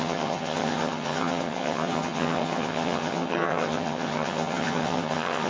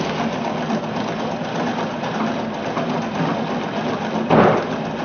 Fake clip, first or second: first